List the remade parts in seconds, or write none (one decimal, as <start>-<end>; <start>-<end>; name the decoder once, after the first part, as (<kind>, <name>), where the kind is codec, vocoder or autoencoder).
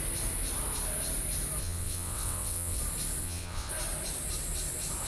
1.6-2.8 (vocoder, WaveNeXt); 3.2-3.7